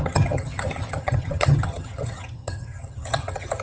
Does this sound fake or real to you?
fake